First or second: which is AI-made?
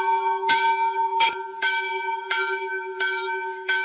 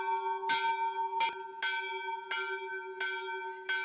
first